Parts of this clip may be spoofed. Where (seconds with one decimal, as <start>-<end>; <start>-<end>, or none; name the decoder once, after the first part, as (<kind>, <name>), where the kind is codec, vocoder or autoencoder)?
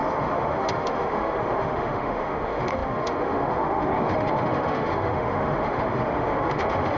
0.0-7.0 (autoencoder, DAC-VAE)